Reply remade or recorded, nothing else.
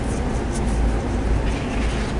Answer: recorded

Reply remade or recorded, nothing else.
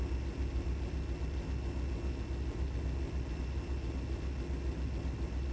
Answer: recorded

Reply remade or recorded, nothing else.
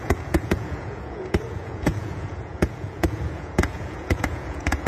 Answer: remade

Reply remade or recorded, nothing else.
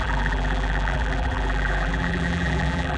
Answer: remade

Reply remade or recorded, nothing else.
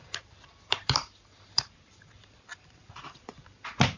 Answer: remade